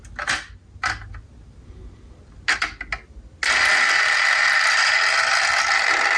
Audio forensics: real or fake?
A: real